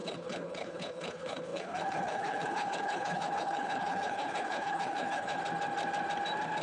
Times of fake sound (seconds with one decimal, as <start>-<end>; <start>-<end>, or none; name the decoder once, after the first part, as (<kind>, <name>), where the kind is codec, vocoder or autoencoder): 0.0-5.4 (codec, HILCodec)